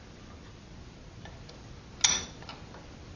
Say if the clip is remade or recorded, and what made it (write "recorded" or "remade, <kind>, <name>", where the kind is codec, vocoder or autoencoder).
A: recorded